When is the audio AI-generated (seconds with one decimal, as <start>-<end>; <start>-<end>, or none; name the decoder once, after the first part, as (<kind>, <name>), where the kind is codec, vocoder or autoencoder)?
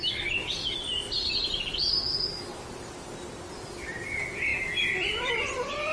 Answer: none